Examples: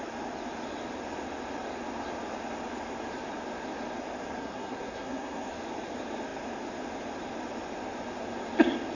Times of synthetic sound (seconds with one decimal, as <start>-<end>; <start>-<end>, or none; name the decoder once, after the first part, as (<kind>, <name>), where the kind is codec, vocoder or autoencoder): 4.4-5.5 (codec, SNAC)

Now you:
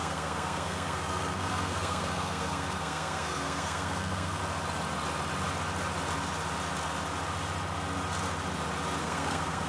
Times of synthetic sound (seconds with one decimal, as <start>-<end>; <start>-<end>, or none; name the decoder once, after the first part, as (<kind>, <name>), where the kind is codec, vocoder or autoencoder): 0.0-4.4 (codec, SNAC); 9.0-9.7

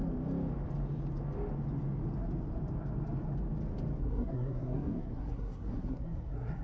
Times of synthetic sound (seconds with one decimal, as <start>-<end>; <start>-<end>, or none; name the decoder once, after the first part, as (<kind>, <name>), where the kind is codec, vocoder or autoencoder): 4.0-6.6 (codec, SNAC)

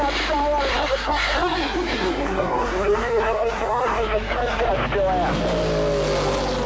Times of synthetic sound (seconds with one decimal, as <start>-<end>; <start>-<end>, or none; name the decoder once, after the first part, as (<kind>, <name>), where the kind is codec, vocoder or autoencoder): 0.7-4.7 (codec, SNAC)

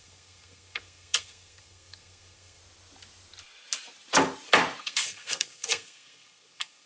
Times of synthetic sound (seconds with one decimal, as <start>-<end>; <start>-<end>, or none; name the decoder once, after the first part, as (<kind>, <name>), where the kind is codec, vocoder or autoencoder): 0.0-2.6 (codec, SNAC); 4.8-6.9

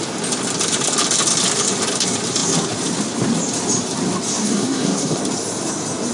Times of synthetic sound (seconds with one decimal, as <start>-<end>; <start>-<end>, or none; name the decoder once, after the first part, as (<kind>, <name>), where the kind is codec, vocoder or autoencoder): 4.4-5.2 (codec, SNAC)

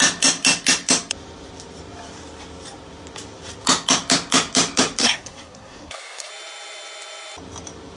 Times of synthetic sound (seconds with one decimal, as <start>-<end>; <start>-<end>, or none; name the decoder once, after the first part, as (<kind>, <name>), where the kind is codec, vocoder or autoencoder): 5.0-6.3 (codec, SNAC)

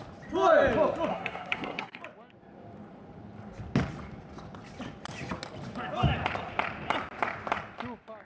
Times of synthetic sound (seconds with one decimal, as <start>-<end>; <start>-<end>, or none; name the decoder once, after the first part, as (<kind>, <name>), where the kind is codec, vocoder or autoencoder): 1.1-2.0 (codec, SNAC)